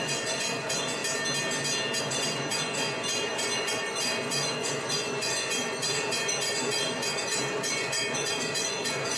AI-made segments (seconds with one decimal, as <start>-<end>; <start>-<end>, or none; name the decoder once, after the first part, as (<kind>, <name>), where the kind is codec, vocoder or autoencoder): 0.0-1.0 (vocoder, Vocos); 2.0-9.2